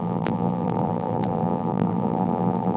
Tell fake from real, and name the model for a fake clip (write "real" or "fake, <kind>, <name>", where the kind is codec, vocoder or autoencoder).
fake, vocoder, BigVGAN v2